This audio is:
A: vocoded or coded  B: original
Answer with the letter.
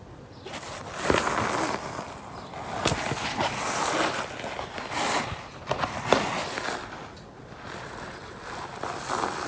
B